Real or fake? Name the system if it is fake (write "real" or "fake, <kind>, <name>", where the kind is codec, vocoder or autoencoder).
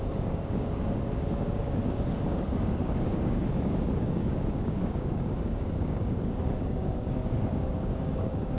fake, codec, DAC